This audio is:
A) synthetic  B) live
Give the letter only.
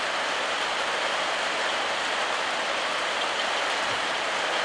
B